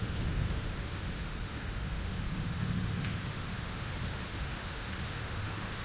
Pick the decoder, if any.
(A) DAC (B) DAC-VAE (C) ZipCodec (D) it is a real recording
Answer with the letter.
B